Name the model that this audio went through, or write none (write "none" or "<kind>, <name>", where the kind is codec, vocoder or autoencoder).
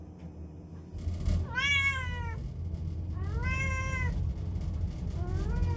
none